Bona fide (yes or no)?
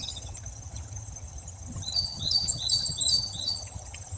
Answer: no